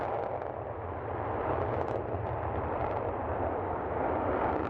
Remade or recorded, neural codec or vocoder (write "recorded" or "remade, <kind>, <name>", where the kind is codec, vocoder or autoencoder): recorded